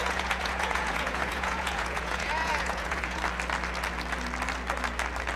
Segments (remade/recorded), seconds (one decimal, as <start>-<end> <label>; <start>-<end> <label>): 0.0-3.2 remade; 3.2-5.4 recorded